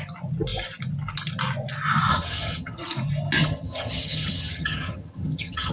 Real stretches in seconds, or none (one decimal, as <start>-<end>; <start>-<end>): 0.0-2.1; 2.8-3.4